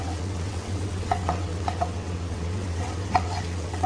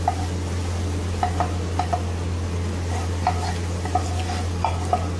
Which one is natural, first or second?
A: second